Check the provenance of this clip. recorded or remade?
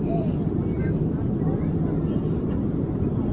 recorded